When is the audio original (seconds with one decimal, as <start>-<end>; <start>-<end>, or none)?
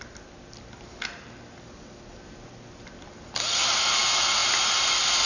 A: 0.0-5.3